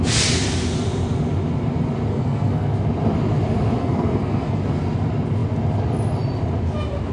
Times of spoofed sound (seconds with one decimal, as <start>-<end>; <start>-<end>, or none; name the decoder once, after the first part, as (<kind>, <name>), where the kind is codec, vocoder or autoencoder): 2.1-2.7 (codec, SNAC); 3.8-4.6